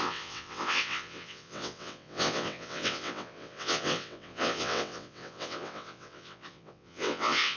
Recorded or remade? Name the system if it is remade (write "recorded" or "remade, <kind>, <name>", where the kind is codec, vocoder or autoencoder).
remade, vocoder, WaveNeXt